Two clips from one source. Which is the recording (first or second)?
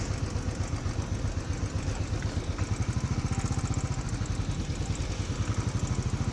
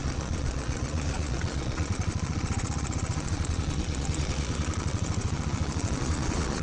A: first